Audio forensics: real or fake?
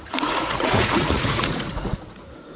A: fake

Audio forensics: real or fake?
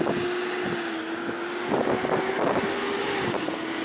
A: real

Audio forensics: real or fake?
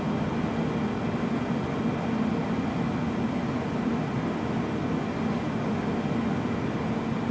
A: real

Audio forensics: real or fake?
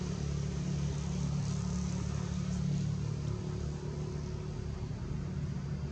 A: real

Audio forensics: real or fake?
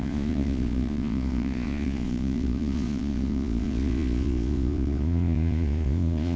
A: fake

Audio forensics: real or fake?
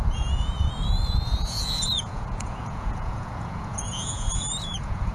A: fake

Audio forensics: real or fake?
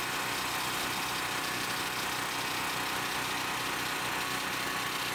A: real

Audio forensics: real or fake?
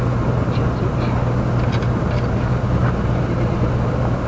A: real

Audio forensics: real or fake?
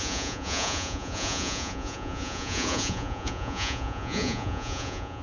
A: fake